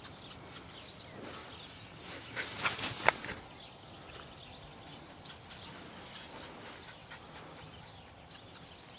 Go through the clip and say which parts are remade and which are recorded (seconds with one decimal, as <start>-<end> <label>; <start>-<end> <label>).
0.0-9.0 recorded